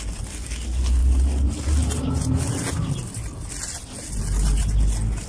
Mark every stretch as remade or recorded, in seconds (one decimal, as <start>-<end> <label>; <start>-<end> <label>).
0.0-5.3 recorded